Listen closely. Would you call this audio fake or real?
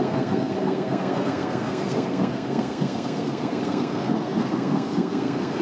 fake